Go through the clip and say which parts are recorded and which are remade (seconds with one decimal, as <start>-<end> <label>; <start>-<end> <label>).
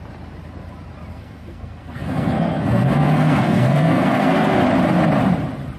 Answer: 0.0-1.1 recorded; 1.1-4.6 remade; 4.6-5.8 recorded